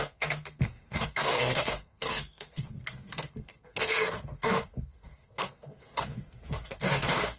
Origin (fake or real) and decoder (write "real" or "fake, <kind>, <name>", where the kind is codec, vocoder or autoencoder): fake, codec, SNAC